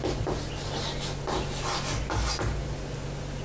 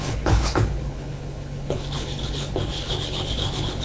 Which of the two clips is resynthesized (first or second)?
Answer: second